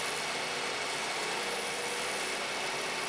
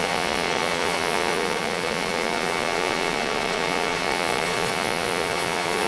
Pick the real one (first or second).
first